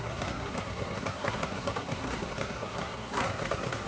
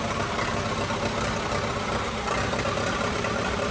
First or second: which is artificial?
first